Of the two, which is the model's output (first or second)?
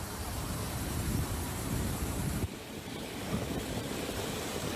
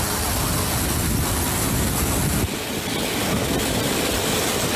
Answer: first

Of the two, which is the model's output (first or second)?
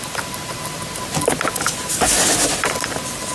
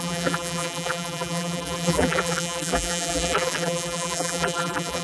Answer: second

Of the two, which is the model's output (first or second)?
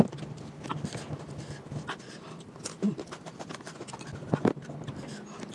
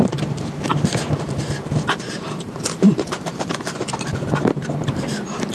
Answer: second